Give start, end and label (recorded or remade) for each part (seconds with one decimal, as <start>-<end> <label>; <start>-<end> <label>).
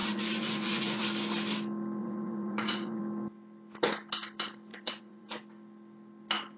0.0-1.0 remade; 1.0-2.0 recorded; 2.0-3.0 remade; 3.0-4.7 recorded; 4.7-5.4 remade; 5.4-6.6 recorded